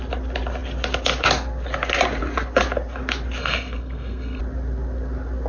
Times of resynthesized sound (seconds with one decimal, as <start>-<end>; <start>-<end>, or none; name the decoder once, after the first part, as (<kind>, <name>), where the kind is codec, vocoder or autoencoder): 3.4-4.4 (codec, SNAC)